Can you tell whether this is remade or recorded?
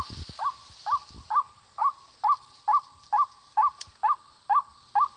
recorded